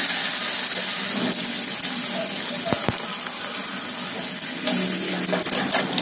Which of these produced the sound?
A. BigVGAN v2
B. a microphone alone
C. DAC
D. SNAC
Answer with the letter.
B